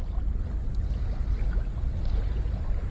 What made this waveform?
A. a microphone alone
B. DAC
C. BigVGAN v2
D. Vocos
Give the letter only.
A